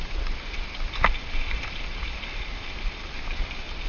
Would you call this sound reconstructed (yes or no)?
yes